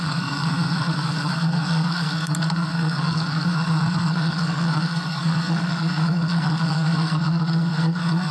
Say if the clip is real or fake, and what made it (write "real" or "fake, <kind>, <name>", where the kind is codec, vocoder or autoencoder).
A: fake, codec, SNAC